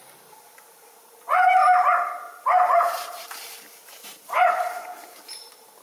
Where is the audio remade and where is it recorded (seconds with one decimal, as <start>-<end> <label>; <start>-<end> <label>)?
0.0-1.6 remade; 1.6-2.4 recorded; 2.4-5.8 remade